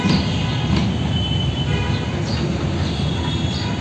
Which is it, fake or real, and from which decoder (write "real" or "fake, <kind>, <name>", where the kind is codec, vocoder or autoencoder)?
real